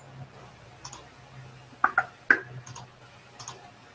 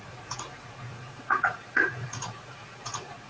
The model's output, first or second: second